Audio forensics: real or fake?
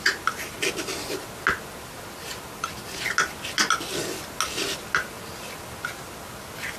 real